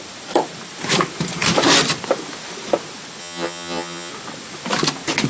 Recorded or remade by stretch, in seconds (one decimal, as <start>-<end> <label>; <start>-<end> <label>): 0.0-3.2 recorded; 3.2-4.1 remade; 4.1-5.3 recorded